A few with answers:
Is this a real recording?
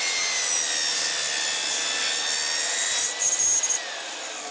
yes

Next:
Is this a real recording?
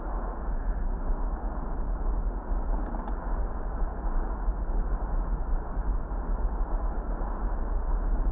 yes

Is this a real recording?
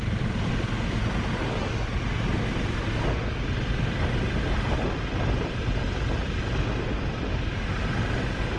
yes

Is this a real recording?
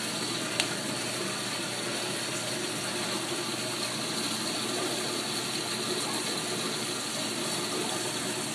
yes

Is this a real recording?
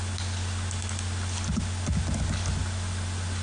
yes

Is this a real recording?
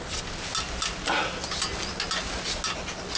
yes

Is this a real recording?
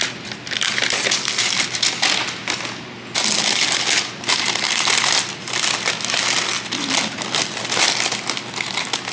yes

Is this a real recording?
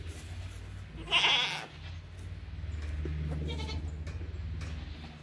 yes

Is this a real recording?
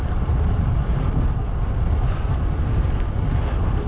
yes